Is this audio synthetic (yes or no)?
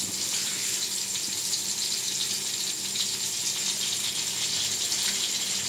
no